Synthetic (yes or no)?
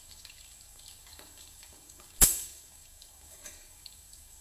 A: yes